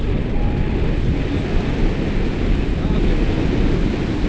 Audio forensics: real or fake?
real